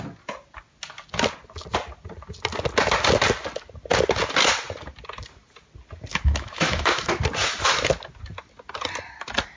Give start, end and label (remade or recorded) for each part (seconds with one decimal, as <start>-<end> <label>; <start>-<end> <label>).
0.0-6.1 recorded; 6.1-7.2 remade; 7.2-9.6 recorded